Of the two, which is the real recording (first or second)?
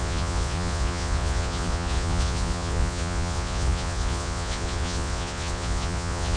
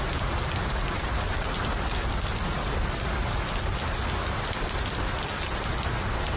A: second